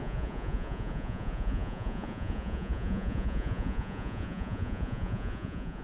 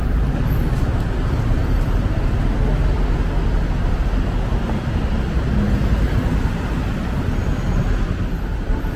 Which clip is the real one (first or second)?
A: second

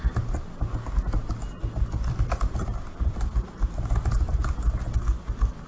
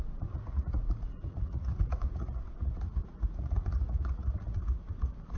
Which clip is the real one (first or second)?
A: first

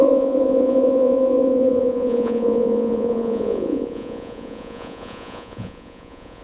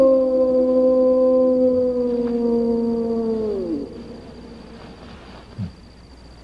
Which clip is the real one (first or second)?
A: second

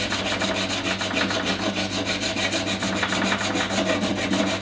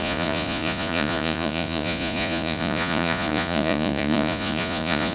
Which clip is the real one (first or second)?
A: first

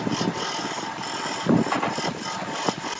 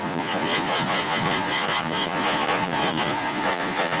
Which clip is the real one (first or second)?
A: first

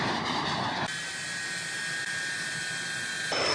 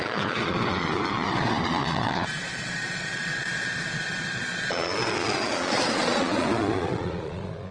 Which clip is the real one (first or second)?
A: first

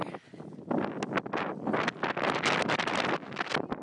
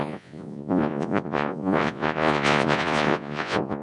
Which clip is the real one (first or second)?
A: first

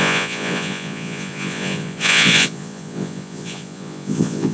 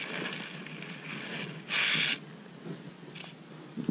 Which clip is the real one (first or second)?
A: second